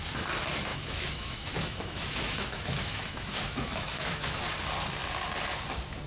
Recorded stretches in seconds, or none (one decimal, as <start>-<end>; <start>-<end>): 0.0-0.7; 4.4-6.1